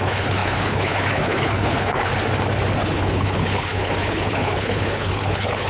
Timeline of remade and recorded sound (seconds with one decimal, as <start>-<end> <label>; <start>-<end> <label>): 0.0-2.1 remade; 2.1-2.8 recorded; 2.8-5.7 remade